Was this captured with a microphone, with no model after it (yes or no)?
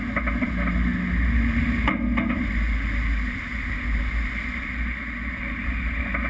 yes